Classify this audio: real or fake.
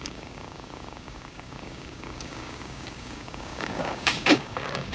fake